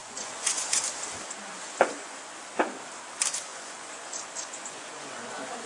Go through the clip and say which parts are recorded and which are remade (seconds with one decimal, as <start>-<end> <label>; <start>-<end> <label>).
0.0-0.8 remade; 0.8-1.5 recorded; 1.5-2.4 remade; 2.4-3.5 recorded; 3.5-5.7 remade